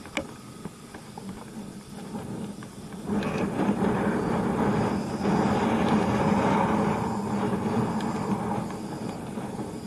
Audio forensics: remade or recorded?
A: recorded